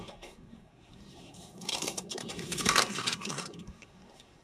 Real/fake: fake